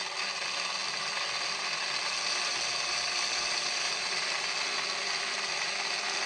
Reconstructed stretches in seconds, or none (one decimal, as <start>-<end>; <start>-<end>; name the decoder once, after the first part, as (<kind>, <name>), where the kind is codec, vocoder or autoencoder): none